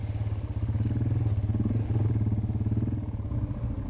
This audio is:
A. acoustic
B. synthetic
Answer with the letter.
A